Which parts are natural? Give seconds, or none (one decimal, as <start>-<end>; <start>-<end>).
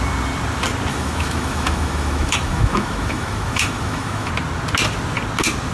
0.0-0.9; 4.3-5.7